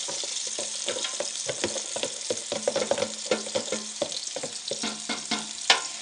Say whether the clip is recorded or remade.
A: recorded